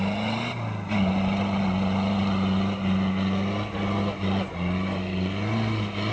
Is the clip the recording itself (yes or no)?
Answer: yes